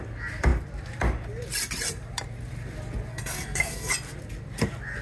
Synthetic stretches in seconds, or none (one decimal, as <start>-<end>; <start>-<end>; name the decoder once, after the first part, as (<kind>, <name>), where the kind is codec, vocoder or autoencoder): 3.1-3.9 (codec, SNAC)